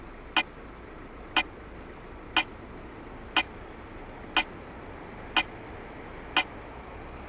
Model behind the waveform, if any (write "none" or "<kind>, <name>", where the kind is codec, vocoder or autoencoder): none